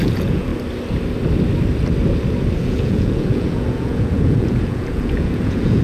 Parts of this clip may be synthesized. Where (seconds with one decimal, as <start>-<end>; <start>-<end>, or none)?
0.0-0.5; 2.6-5.8